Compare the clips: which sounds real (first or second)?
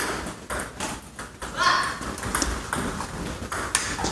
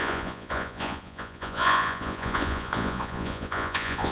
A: first